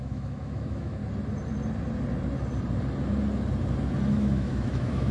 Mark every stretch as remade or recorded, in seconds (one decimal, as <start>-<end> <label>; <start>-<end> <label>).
0.0-1.0 remade; 1.0-4.1 recorded; 4.1-5.1 remade